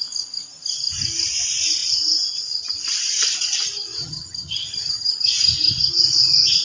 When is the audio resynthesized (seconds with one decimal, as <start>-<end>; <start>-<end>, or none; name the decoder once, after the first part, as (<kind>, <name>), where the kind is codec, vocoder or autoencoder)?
4.0-5.1 (vocoder, HiFi-GAN)